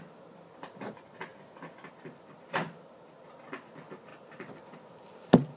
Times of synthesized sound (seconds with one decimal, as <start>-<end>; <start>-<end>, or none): none